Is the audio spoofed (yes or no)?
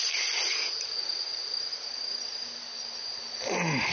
no